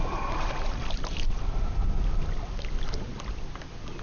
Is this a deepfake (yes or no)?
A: no